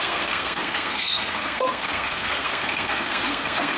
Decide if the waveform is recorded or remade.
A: remade